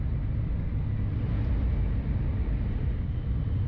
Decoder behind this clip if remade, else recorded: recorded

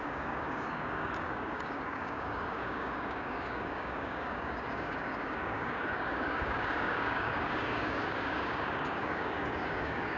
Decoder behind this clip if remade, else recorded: remade, codec, DAC